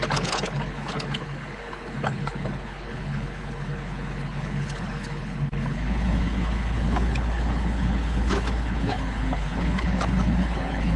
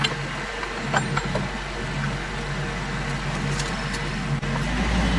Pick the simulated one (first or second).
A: first